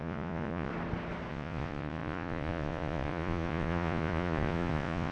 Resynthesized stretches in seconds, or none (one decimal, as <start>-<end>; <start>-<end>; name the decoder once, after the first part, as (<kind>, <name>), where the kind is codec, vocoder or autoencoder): 0.0-0.7 (vocoder, Vocos); 1.3-5.1